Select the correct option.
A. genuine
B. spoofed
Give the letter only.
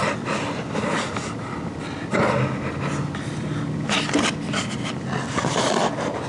A